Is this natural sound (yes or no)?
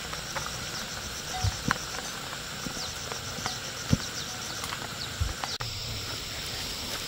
yes